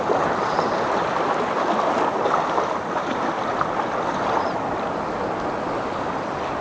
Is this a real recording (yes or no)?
yes